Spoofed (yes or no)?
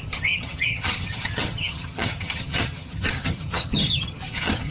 yes